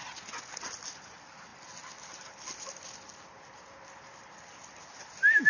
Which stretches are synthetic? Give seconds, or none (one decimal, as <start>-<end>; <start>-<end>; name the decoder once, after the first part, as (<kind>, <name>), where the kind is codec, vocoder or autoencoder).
none